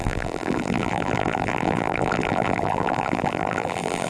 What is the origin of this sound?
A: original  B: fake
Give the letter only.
B